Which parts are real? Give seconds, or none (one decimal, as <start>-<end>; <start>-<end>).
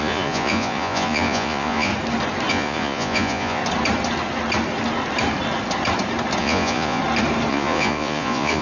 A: 1.9-2.5; 3.6-6.4; 7.0-7.5